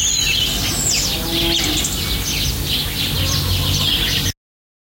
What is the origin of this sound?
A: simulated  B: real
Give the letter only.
B